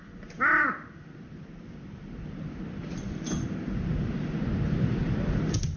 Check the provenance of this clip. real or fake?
real